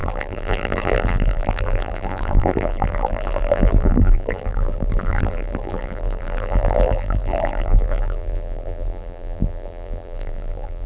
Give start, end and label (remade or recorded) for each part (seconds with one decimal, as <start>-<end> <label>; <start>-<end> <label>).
0.0-10.9 remade